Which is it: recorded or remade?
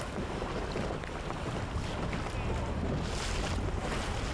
recorded